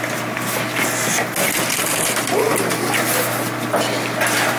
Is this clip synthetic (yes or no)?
no